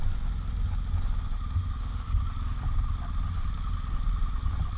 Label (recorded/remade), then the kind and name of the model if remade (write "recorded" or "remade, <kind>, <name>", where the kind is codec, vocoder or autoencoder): recorded